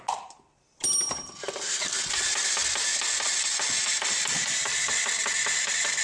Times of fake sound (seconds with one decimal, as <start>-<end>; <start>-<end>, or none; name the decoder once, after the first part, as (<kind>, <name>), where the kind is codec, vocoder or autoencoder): none